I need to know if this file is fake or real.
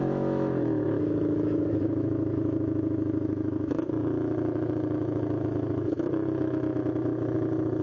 fake